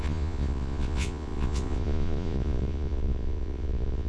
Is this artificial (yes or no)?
yes